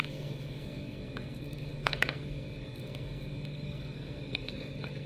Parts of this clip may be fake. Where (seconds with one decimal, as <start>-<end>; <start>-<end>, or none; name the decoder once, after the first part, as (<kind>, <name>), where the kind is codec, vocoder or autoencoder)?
0.0-5.1 (codec, SNAC)

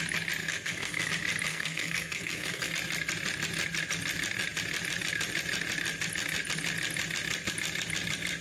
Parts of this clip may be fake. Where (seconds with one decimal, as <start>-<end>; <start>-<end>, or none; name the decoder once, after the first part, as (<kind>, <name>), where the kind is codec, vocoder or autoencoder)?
0.4-1.1 (codec, SNAC); 1.5-2.7

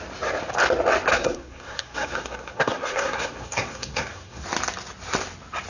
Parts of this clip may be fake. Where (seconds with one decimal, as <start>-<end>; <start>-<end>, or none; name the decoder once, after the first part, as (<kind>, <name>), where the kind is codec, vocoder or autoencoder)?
1.1-4.4 (codec, SNAC)

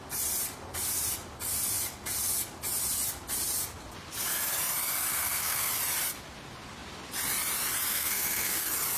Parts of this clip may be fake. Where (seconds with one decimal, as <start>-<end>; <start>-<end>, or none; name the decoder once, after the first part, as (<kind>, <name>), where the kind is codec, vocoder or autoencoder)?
5.1-5.7 (codec, SNAC); 7.9-8.6

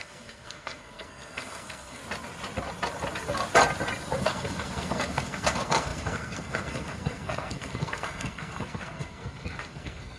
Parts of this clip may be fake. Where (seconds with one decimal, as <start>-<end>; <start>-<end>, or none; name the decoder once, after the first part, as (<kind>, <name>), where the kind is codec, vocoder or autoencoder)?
0.0-2.0 (codec, SNAC); 4.2-10.2

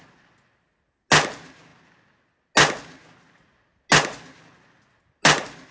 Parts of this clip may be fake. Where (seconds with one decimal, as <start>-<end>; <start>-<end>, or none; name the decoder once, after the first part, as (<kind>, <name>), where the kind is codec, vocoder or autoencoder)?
none

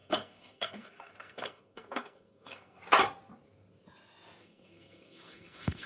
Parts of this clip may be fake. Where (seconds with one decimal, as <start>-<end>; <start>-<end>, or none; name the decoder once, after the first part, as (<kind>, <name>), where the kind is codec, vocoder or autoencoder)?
0.0-2.8 (codec, SNAC); 4.4-5.9